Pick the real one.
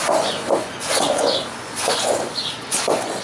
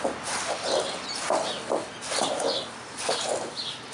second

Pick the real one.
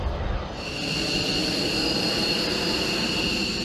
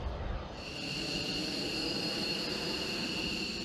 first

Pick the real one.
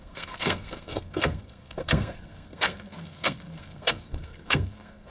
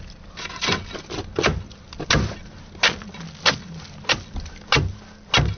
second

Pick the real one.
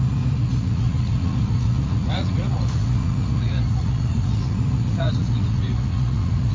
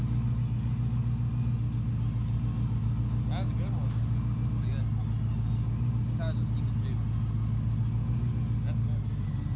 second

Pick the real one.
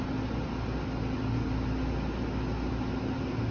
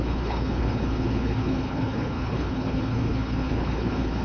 first